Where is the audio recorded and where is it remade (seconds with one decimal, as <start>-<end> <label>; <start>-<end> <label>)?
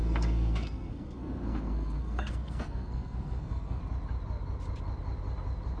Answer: 0.0-3.8 remade; 3.8-5.8 recorded